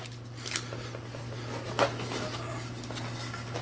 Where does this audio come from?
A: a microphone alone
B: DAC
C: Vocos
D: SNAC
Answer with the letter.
A